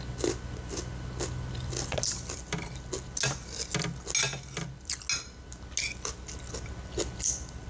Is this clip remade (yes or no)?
no